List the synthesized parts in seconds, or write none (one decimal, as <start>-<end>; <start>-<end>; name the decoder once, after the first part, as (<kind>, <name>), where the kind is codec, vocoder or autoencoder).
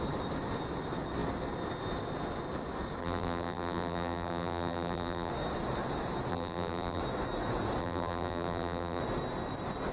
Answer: 3.0-5.3 (vocoder, BigVGAN v2); 6.3-7.0; 7.8-9.0